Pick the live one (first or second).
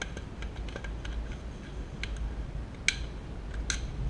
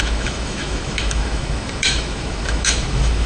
first